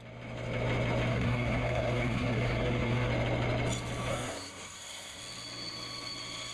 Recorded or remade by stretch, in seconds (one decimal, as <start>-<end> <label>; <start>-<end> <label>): 0.0-1.1 recorded; 1.1-3.1 remade; 3.1-4.1 recorded; 4.1-5.2 remade; 5.2-6.5 recorded